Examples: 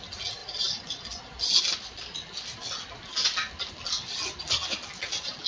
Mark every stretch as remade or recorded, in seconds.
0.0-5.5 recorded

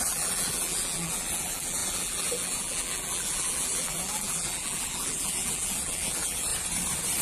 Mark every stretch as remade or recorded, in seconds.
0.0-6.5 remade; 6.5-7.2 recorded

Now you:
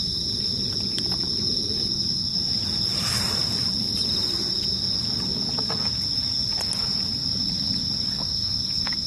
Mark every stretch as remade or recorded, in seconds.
0.0-9.1 recorded

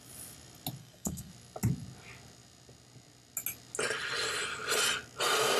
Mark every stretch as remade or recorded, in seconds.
0.0-0.8 recorded; 0.8-1.3 remade; 1.3-5.6 recorded